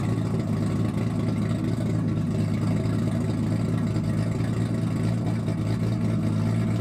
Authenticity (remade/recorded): recorded